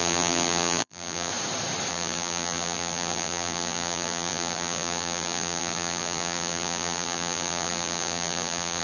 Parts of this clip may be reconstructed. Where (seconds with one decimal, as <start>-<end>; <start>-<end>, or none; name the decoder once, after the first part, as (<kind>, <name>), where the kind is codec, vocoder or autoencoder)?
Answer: 0.0-1.3 (vocoder, BigVGAN v2); 1.9-8.8